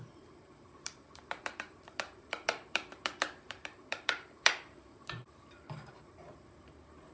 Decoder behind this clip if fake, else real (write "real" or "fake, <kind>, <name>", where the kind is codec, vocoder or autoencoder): fake, vocoder, BigVGAN v2